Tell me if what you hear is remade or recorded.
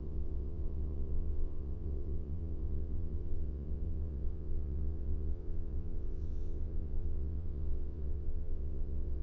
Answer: remade